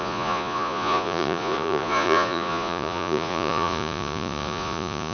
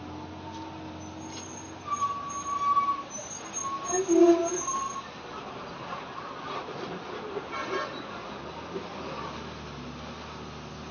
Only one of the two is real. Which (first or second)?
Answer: second